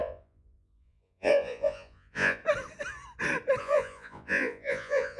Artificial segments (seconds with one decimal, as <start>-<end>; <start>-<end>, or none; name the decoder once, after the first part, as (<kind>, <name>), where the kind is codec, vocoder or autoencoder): 0.0-2.4 (vocoder, Vocos); 3.6-5.2